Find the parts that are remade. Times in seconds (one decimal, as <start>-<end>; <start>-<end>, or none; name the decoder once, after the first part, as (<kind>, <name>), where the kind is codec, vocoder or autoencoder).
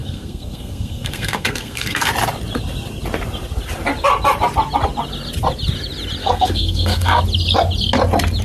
0.0-2.1 (codec, SNAC); 6.2-7.2